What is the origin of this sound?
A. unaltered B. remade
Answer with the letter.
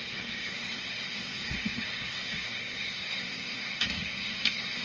B